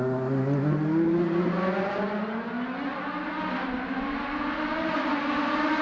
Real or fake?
real